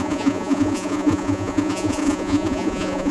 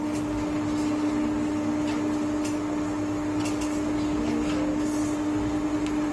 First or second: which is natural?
second